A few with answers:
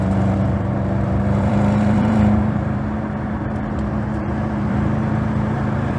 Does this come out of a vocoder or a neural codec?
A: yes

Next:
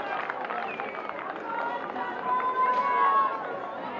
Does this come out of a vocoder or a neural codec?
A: no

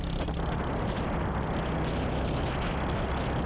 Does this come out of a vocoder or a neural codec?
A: no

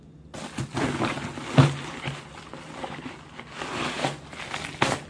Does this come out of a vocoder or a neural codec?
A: no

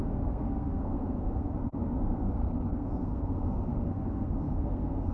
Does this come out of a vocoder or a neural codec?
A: yes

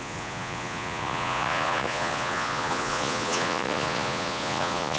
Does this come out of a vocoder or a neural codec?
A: yes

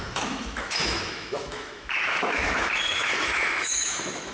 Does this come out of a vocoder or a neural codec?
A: yes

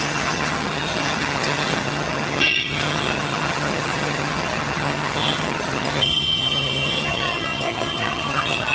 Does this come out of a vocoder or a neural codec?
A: yes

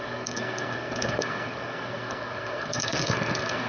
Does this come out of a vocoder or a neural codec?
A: yes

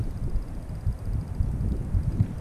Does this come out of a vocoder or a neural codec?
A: no